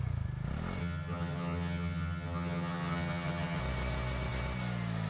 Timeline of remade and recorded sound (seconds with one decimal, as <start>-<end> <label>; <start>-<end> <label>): 0.0-0.8 recorded; 0.8-3.6 remade; 3.6-5.1 recorded